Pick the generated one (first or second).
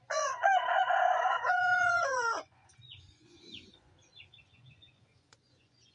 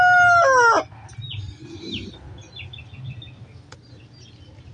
first